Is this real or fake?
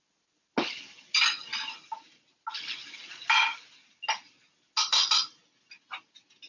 real